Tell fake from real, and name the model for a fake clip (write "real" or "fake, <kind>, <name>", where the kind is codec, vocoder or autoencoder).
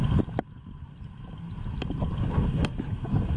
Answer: real